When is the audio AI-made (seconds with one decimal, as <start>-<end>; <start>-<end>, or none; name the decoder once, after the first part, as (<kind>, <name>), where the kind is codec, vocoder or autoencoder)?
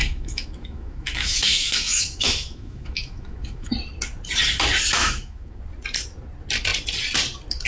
0.0-3.7 (autoencoder, DAC-VAE); 5.0-5.6